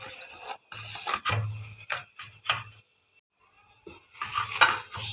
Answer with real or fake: real